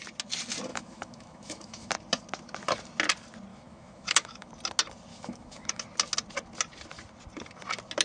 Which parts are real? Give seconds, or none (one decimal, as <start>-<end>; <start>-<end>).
0.0-0.7; 1.9-3.5; 4.5-5.1; 5.8-8.0